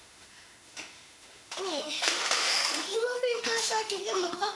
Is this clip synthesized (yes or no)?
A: yes